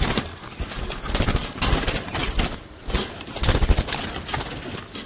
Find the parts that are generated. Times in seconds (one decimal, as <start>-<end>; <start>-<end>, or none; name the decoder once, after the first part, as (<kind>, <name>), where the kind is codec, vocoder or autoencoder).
none